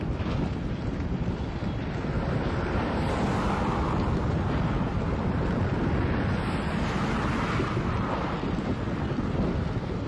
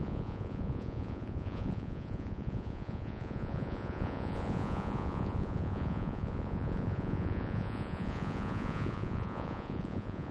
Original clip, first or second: first